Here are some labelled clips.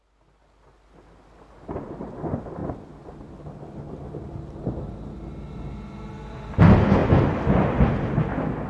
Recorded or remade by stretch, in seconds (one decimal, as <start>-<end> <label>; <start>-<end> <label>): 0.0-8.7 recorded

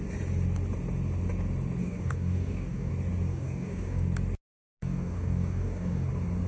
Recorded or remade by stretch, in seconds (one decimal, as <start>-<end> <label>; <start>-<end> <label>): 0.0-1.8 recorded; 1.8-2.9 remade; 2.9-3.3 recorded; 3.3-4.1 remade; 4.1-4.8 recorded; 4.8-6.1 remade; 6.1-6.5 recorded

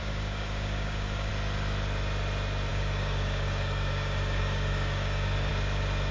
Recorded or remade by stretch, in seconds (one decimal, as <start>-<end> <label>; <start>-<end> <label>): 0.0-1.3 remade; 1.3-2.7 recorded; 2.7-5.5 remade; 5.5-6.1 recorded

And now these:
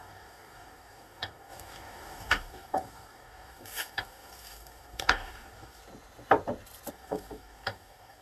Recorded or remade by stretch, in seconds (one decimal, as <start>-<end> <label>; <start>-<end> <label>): 0.0-5.8 remade; 5.8-6.9 recorded; 6.9-8.2 remade

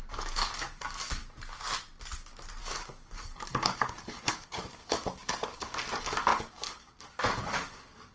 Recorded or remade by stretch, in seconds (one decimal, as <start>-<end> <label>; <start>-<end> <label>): 0.0-1.2 remade; 1.2-2.6 recorded; 2.6-8.1 remade